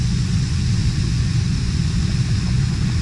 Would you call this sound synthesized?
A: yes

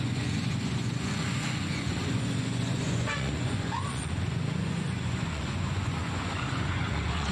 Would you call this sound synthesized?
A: yes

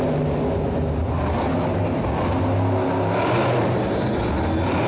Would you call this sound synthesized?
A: no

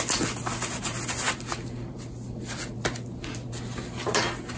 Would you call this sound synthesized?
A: no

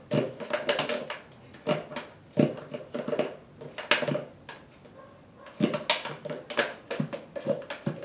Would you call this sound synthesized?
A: no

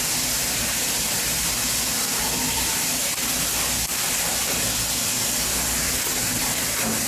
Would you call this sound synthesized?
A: no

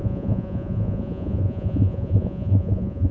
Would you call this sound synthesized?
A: yes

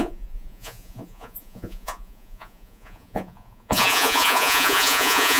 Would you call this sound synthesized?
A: yes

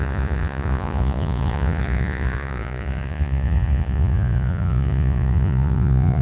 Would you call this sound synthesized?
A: yes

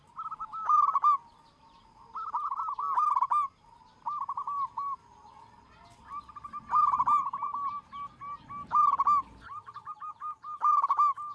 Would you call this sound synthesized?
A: no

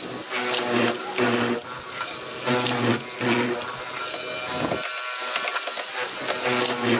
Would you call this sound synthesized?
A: no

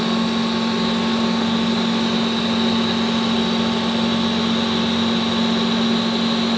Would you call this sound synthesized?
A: no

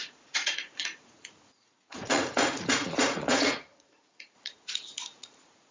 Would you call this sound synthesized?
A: yes